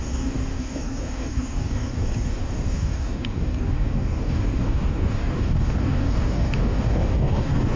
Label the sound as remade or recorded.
remade